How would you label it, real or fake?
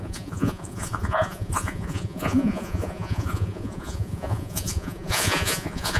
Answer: fake